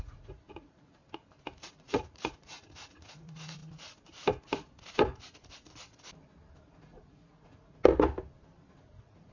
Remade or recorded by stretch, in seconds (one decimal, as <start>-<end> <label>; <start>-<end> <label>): 0.0-1.0 remade; 1.0-1.7 recorded; 1.7-3.6 remade; 3.6-6.6 recorded; 6.6-7.8 remade; 7.8-8.7 recorded; 8.7-9.3 remade